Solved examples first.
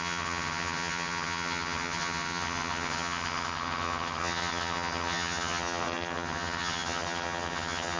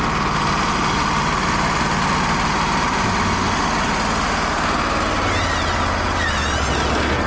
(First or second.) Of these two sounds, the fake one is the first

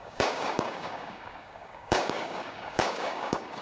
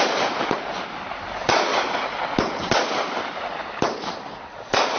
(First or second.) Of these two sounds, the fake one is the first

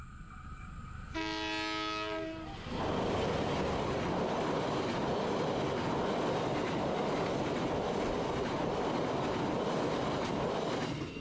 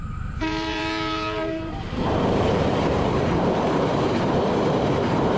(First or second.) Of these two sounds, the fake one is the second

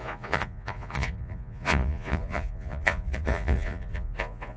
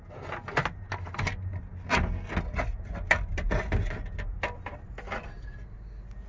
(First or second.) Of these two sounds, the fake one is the first